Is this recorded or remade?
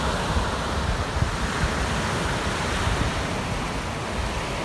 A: recorded